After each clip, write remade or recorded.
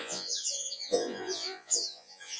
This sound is remade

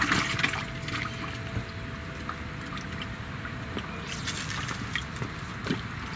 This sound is recorded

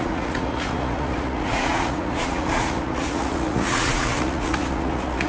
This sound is remade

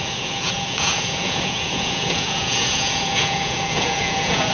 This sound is remade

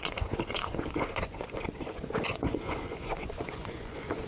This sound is remade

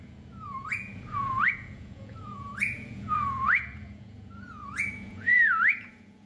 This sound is remade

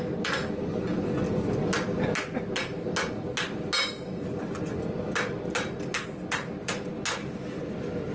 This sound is recorded